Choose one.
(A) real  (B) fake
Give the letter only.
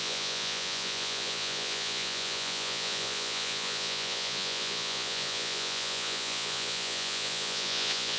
B